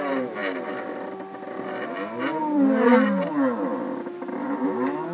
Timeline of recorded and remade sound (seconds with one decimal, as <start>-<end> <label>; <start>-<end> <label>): 0.0-2.9 remade; 2.9-4.0 recorded; 4.0-5.1 remade